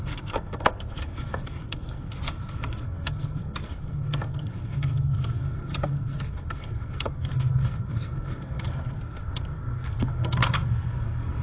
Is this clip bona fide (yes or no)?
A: no